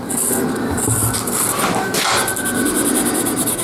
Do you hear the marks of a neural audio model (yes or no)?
no